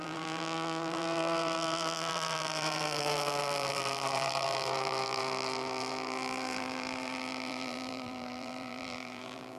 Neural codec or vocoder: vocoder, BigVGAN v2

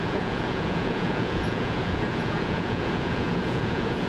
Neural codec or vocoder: vocoder, Vocos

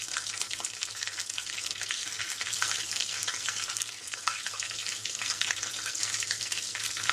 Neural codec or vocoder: codec, SNAC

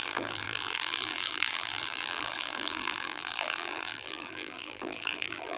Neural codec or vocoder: vocoder, BigVGAN v2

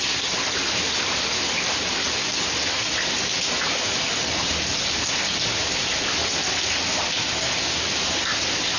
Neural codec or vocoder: none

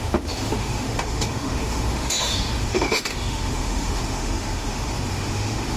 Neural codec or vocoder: autoencoder, DAC-VAE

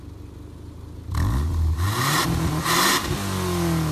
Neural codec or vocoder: none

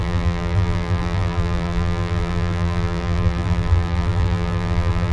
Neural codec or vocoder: vocoder, BigVGAN v2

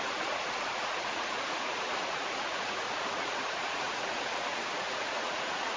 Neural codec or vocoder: vocoder, Vocos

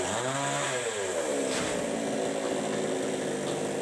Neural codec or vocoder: none